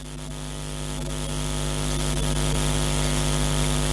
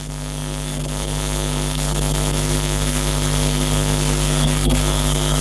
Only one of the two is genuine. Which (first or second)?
first